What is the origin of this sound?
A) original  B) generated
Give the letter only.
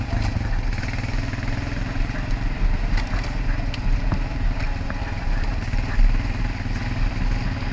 A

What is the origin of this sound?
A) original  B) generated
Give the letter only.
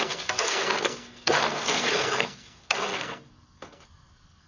B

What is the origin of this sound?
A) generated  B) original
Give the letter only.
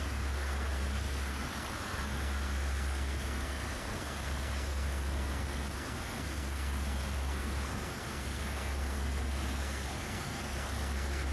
A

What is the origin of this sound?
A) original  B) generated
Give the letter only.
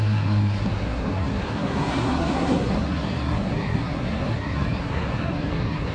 B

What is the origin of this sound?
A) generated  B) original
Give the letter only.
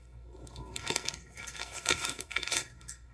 A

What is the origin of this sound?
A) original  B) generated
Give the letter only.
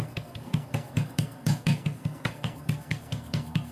B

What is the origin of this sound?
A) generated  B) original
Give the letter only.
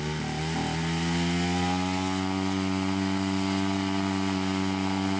B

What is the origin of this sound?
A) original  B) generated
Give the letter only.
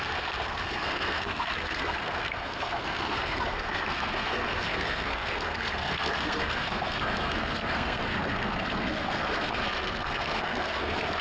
B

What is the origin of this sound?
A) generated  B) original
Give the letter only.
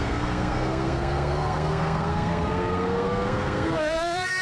A